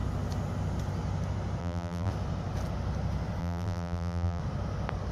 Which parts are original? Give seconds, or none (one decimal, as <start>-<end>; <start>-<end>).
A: 0.0-1.6; 2.1-3.4; 4.4-5.1